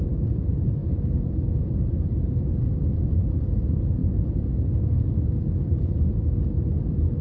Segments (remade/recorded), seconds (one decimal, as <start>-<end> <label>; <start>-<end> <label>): 0.0-7.2 recorded